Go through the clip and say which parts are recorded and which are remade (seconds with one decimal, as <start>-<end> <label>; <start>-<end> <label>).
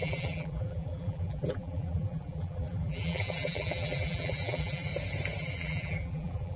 0.0-4.9 remade; 4.9-5.4 recorded; 5.4-6.6 remade